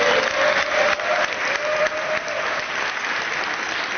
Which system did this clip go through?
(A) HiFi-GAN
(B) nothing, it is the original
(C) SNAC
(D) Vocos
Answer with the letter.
B